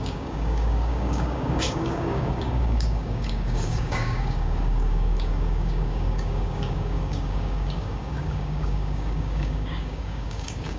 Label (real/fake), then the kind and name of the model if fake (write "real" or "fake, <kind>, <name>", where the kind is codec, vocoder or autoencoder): fake, codec, DAC